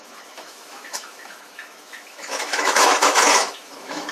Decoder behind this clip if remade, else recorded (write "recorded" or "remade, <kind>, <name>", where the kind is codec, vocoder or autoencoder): remade, autoencoder, DAC-VAE